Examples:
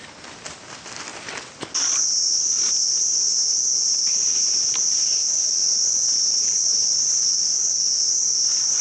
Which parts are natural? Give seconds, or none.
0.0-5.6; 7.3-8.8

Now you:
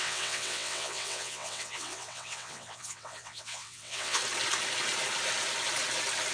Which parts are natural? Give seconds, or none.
4.2-6.3

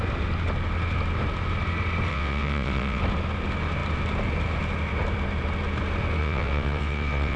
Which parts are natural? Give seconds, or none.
0.0-2.1; 3.0-6.2

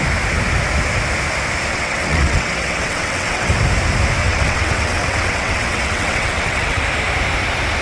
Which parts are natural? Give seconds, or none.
0.0-1.7; 3.5-4.2; 6.8-7.8